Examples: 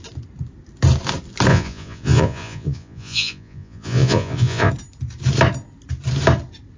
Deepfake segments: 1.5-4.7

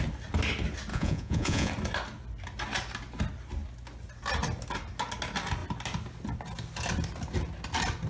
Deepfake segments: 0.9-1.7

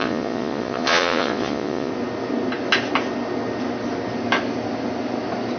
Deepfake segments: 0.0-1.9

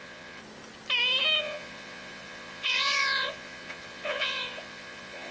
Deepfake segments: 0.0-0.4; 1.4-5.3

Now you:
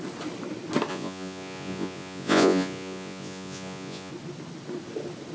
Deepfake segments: 0.9-4.1

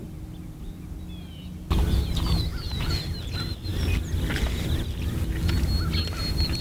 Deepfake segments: 2.5-3.0